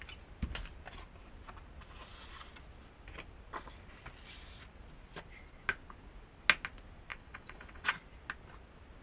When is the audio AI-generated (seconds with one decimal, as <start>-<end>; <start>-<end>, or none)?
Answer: 7.1-7.9